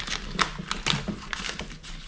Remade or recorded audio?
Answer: recorded